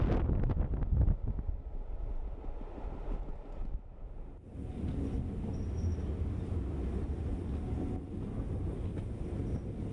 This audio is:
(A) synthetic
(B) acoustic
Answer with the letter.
B